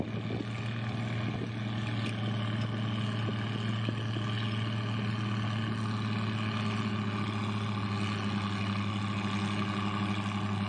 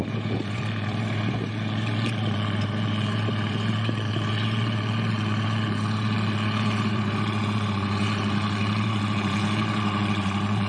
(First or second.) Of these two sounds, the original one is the first